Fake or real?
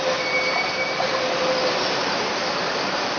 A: fake